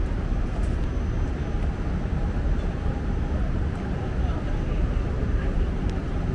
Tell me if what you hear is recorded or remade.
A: recorded